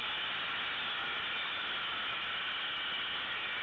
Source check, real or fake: real